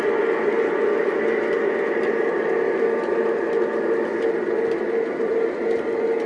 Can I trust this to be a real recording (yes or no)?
yes